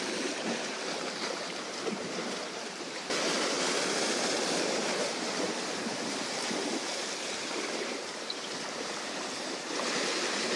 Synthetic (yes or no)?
yes